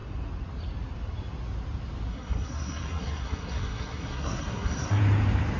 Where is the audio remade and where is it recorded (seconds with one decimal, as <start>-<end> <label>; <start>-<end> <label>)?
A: 0.0-2.1 recorded; 2.1-5.0 remade; 5.0-5.6 recorded